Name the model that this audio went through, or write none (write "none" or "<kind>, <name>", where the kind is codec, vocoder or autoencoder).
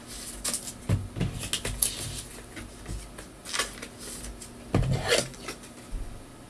none